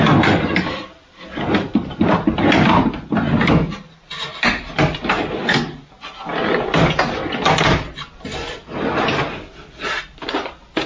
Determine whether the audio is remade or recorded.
recorded